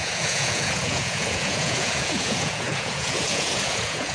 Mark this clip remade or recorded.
remade